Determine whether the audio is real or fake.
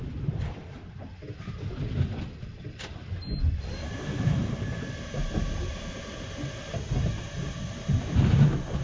real